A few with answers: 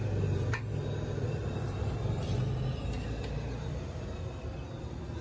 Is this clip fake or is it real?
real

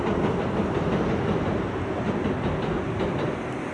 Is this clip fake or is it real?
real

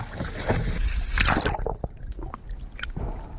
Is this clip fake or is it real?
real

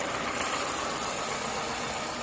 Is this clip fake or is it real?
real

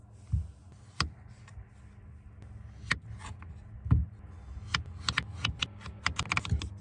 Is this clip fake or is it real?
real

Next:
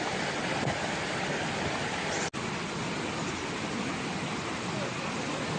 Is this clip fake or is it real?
real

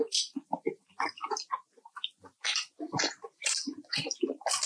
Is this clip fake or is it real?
real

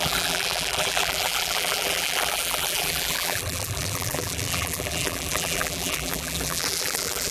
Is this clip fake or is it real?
fake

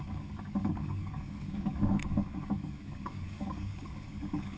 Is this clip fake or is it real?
fake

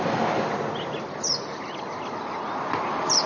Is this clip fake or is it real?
real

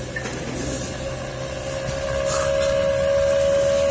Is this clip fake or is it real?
real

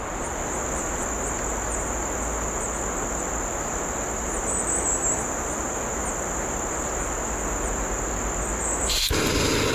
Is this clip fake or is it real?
real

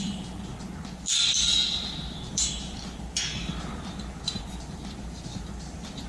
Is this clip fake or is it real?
fake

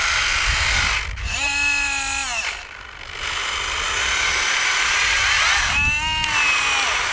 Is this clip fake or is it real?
real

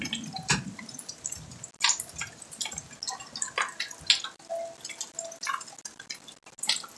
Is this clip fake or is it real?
real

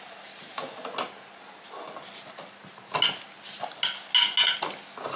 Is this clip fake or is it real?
real